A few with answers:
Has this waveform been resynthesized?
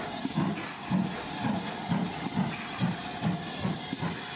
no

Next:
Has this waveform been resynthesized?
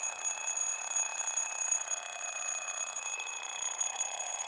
yes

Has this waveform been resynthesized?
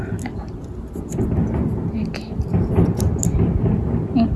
no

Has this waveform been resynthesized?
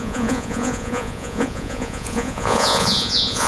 yes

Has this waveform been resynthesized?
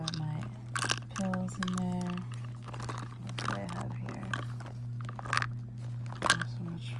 no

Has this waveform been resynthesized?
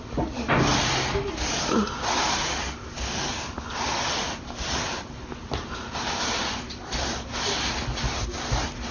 no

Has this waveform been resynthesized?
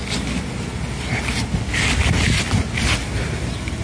no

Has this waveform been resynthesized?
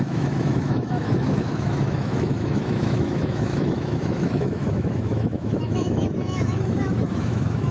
yes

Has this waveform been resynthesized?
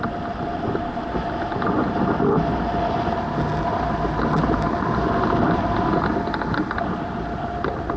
no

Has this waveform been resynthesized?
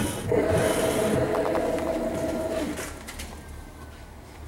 no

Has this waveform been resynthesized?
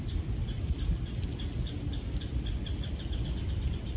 no